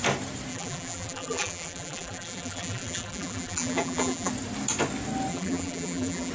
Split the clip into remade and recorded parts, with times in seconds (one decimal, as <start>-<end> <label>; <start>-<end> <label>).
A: 0.0-0.5 recorded; 0.5-4.3 remade; 4.3-5.3 recorded; 5.3-6.3 remade